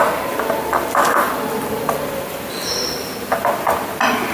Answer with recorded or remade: recorded